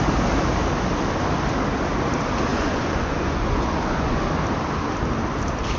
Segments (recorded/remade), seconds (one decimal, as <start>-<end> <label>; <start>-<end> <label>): 0.0-2.5 recorded; 2.5-4.2 remade; 4.2-5.8 recorded